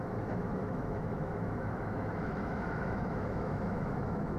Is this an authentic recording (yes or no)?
no